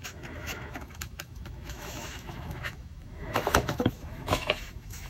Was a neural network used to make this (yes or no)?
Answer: yes